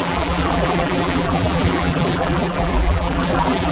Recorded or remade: remade